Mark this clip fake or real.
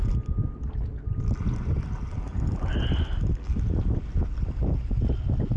real